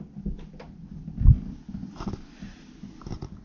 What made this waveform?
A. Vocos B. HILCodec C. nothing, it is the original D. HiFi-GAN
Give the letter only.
C